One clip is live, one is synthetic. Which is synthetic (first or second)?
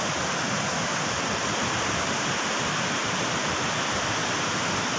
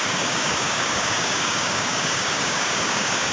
second